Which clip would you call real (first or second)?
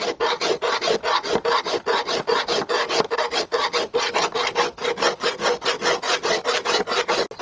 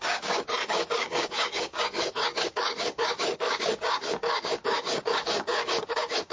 first